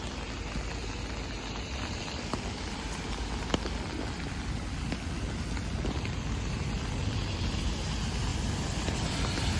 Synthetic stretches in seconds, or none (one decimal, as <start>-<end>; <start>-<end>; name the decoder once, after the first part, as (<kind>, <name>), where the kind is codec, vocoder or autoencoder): none